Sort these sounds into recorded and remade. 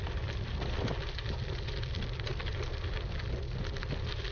recorded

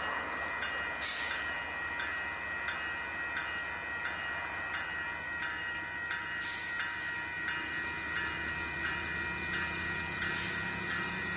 recorded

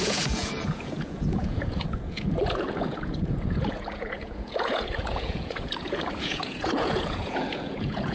remade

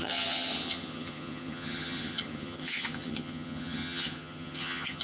remade